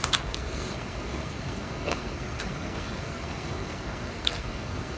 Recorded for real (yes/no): no